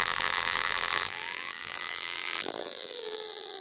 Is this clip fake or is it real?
fake